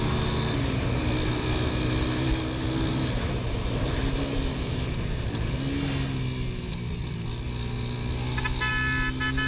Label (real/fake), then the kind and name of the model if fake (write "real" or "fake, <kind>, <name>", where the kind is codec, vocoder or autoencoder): real